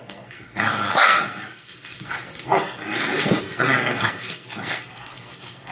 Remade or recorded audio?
remade